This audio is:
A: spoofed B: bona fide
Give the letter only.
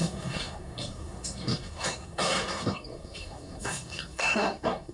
A